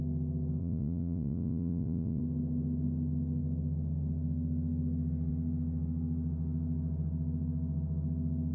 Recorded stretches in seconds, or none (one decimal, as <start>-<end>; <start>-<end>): 0.0-0.6; 2.2-8.5